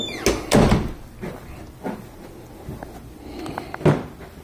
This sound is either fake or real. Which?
real